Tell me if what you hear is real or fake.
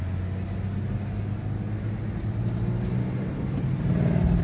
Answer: real